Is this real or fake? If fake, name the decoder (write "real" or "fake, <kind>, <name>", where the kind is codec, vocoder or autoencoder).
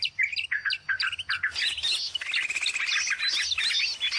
real